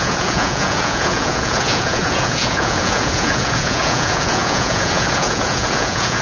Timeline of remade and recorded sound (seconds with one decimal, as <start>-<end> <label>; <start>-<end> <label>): 0.0-6.2 remade

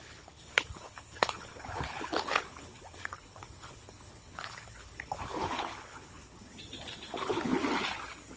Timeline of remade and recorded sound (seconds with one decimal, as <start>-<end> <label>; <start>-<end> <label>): 0.0-6.5 remade; 6.5-7.1 recorded; 7.1-7.5 remade; 7.5-8.4 recorded